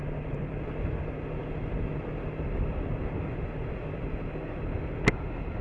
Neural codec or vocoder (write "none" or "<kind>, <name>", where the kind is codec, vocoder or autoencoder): none